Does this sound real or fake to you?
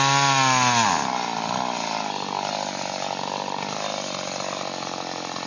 real